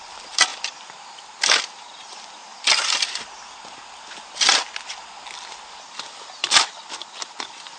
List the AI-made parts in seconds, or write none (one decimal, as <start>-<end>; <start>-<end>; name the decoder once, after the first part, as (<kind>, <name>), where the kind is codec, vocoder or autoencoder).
none